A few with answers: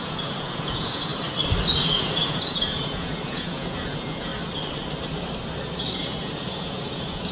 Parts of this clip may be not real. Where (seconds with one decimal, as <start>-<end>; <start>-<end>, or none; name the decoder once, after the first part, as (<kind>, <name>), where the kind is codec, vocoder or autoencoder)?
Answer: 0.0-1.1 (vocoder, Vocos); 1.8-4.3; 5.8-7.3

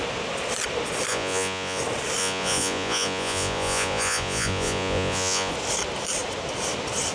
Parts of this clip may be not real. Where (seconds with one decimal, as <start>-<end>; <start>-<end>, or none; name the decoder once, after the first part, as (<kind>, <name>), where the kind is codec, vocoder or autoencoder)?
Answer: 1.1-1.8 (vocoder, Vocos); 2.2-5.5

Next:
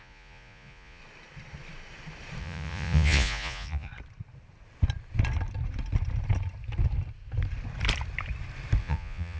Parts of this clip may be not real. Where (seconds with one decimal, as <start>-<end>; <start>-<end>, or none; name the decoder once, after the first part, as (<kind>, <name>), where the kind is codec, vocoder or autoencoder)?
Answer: 0.0-1.0 (vocoder, Vocos); 2.4-3.9; 8.8-9.4

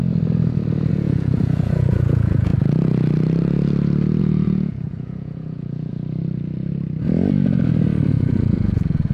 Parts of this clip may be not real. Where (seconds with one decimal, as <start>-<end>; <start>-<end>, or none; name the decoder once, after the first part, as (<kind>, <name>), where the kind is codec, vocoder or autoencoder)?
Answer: 0.9-2.5 (vocoder, Vocos); 4.2-5.9; 8.1-9.1

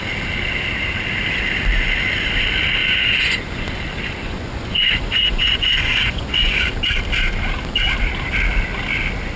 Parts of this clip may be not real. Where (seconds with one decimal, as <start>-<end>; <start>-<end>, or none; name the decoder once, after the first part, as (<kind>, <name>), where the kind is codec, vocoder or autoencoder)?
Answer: 2.8-3.8 (vocoder, Vocos); 4.2-6.7

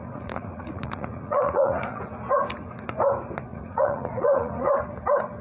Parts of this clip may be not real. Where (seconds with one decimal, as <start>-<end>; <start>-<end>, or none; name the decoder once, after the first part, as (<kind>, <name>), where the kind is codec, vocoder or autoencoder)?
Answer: 0.0-2.1 (vocoder, Vocos); 3.5-4.7